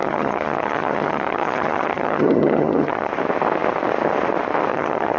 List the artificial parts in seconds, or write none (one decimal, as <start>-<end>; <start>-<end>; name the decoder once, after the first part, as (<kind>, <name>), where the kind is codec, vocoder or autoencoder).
0.0-3.1 (vocoder, HiFi-GAN); 4.7-5.2